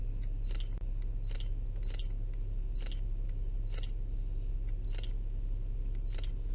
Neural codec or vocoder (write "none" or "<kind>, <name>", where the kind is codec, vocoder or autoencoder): none